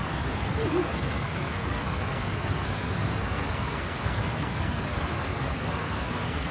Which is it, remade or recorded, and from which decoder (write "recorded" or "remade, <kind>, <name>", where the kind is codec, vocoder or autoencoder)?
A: remade, codec, SNAC